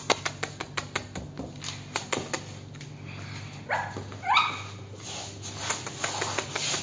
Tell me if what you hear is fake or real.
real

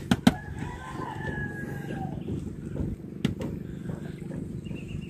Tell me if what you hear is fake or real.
real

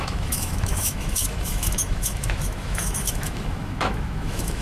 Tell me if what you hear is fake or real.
fake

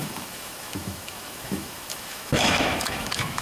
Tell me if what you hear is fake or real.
fake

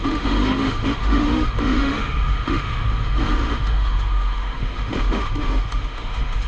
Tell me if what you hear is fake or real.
fake